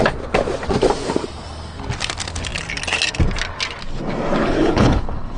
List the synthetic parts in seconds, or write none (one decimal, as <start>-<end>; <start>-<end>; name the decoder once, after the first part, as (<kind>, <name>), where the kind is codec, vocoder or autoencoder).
4.4-5.4 (codec, HILCodec)